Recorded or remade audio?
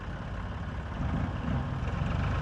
recorded